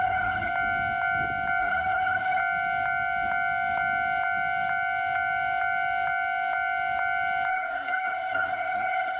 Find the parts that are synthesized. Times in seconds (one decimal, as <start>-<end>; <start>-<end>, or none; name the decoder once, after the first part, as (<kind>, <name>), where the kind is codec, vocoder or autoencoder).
0.0-0.5 (codec, SNAC); 1.6-2.4; 7.5-9.2